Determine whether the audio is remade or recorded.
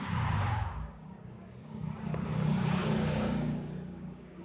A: remade